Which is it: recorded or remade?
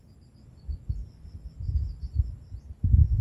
recorded